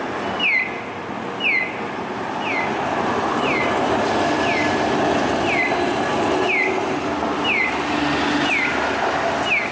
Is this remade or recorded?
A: recorded